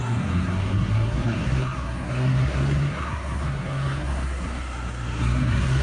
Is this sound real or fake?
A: fake